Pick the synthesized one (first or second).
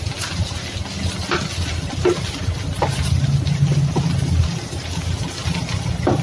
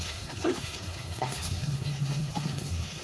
second